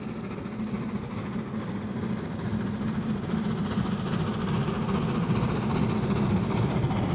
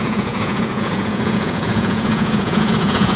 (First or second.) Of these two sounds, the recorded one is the first